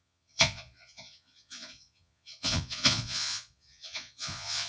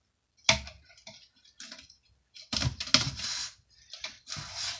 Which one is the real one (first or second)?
second